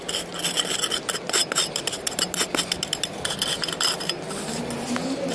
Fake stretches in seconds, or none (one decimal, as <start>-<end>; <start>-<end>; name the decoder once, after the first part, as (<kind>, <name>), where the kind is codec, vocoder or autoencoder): none